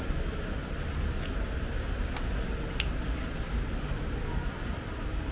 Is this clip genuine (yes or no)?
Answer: yes